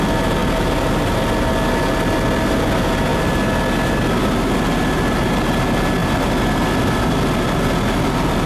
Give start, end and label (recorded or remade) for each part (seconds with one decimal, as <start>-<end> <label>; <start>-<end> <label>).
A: 0.0-8.5 recorded